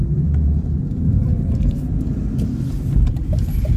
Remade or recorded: remade